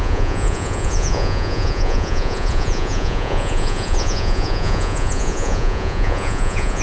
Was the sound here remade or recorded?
remade